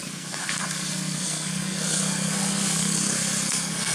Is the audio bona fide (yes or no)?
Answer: no